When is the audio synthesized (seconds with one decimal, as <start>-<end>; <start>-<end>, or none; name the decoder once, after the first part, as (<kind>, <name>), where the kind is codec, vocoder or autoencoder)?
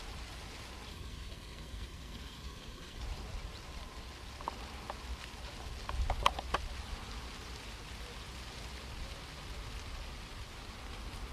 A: 0.9-3.0 (codec, SNAC)